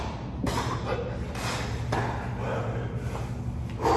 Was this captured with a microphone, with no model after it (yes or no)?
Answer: yes